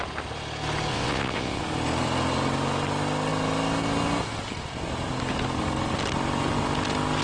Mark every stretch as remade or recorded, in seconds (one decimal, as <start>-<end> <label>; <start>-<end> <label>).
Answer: 0.0-0.9 recorded; 0.9-1.6 remade; 1.6-7.2 recorded